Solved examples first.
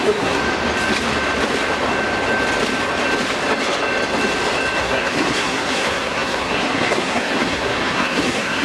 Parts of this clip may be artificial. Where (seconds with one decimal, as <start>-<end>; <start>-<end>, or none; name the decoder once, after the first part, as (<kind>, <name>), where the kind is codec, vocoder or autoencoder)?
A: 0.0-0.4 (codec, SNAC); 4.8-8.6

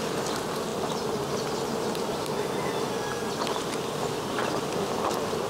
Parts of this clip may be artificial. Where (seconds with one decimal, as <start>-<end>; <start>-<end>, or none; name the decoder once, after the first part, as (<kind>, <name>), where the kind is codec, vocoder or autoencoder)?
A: none

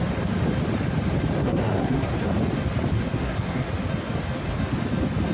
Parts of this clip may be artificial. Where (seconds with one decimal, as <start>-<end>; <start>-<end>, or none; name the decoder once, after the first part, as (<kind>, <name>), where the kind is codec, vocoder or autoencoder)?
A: 1.4-2.1 (codec, SNAC); 2.9-3.7

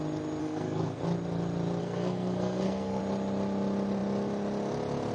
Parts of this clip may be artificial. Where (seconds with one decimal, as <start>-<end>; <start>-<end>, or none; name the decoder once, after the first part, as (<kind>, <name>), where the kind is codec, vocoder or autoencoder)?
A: 0.4-1.0 (codec, SNAC); 1.8-3.0